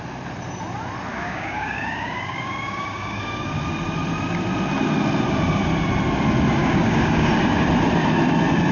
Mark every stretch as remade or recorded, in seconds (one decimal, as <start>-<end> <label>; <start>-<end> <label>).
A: 0.0-1.1 recorded; 1.1-3.6 remade; 3.6-6.6 recorded; 6.6-7.3 remade; 7.3-8.7 recorded